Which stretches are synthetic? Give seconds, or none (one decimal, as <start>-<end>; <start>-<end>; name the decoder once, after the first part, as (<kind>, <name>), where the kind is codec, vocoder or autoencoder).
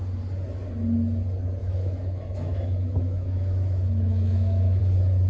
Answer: 1.6-4.8 (autoencoder, DAC-VAE)